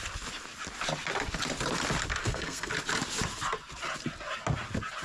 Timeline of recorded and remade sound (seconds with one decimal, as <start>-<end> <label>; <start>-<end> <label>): 0.0-2.2 recorded; 2.2-2.7 remade; 2.7-5.0 recorded